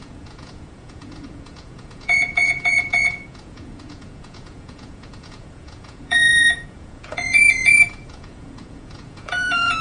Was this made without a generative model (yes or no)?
no